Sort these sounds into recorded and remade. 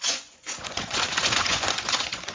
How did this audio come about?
remade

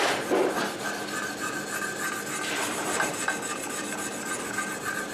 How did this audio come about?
recorded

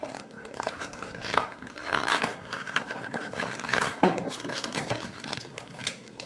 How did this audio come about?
remade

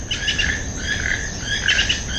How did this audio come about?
recorded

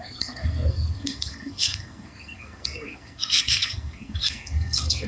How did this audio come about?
remade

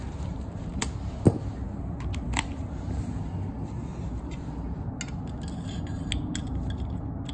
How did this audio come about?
recorded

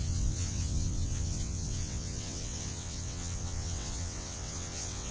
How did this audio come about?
remade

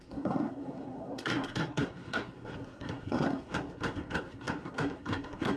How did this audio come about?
remade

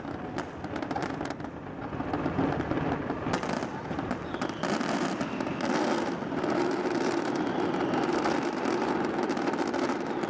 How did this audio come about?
recorded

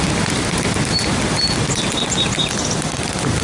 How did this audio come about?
recorded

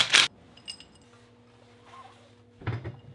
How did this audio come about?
recorded